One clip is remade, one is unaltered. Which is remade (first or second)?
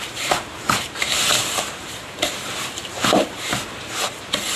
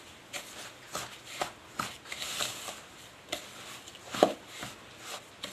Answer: first